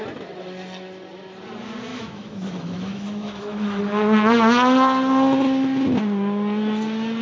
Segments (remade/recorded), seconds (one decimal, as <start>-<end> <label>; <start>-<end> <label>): 0.0-1.9 recorded; 1.9-3.8 remade; 3.8-7.2 recorded